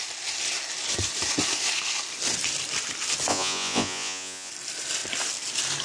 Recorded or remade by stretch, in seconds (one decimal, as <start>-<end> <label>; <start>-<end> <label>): 0.0-3.3 recorded; 3.3-4.5 remade; 4.5-5.8 recorded